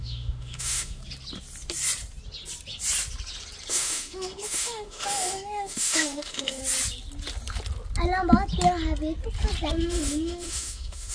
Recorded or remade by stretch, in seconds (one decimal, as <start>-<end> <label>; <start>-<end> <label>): 0.0-1.0 remade; 1.0-3.7 recorded; 3.7-6.6 remade; 6.6-9.7 recorded; 9.7-11.1 remade